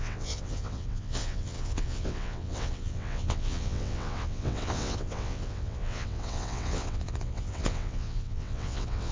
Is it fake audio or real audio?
fake